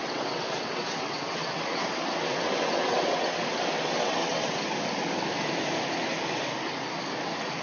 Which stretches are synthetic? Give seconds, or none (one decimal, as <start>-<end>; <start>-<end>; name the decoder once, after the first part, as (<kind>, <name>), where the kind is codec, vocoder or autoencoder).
0.0-4.6 (vocoder, WaveNeXt)